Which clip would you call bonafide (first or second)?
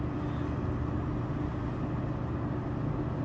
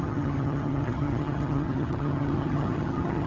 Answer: first